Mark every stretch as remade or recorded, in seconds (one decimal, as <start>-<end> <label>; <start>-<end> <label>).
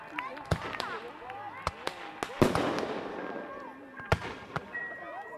0.0-1.0 remade; 1.0-4.2 recorded; 4.2-5.4 remade